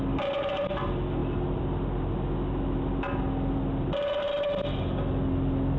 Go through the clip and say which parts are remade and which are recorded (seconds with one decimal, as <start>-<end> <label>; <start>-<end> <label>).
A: 0.0-5.8 recorded